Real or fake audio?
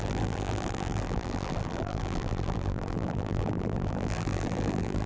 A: fake